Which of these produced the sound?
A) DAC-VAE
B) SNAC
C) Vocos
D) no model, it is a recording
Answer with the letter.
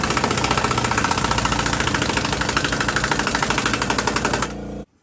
D